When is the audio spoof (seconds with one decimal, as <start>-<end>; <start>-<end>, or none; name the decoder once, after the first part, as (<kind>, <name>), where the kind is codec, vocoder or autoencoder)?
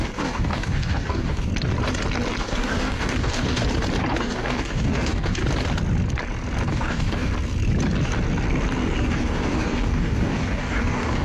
0.0-1.5 (codec, DAC); 2.4-3.6; 4.2-5.4; 6.7-7.3; 9.0-11.2